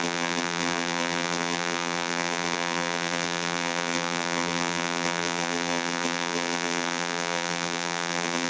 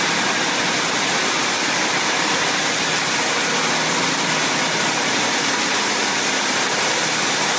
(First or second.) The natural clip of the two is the second